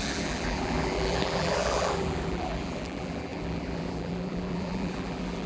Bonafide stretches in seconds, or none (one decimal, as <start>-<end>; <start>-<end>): none